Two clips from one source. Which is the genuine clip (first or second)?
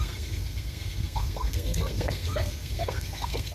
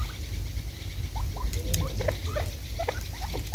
second